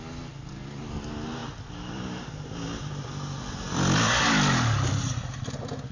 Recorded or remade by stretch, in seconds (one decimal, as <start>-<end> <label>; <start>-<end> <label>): 0.0-5.9 recorded